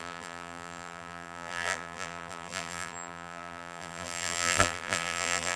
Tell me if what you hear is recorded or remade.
remade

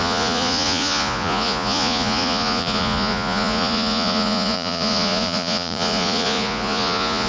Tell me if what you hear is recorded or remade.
remade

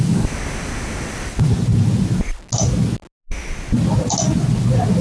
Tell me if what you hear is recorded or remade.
recorded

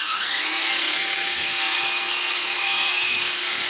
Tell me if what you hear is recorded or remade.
remade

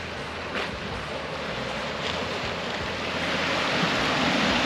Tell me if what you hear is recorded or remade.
recorded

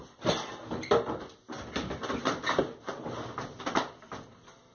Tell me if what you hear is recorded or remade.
recorded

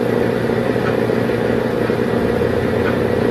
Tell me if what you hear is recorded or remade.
recorded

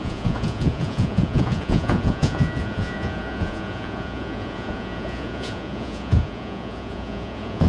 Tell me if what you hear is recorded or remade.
remade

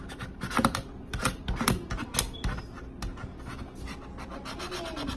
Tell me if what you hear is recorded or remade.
recorded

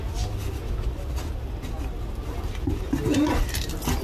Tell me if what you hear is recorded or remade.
recorded